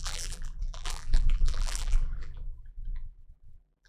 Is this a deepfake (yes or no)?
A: yes